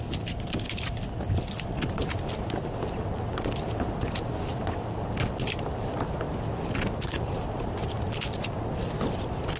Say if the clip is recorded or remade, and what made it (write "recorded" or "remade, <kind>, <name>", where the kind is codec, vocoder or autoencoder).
recorded